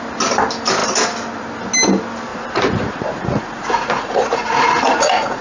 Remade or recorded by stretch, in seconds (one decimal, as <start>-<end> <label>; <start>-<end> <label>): 0.0-2.3 recorded; 2.3-5.4 remade